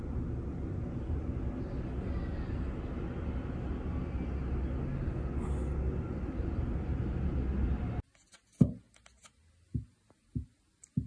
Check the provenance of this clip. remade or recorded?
recorded